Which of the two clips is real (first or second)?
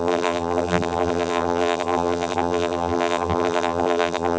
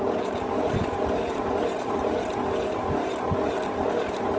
second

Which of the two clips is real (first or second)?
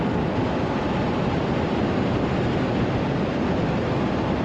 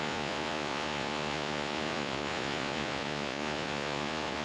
first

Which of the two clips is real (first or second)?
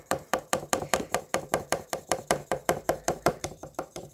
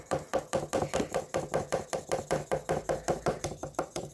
second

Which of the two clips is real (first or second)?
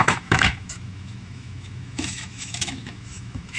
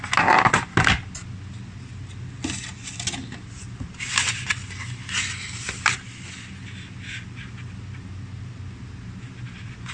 second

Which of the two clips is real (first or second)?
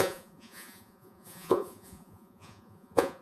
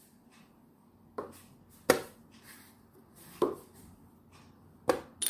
second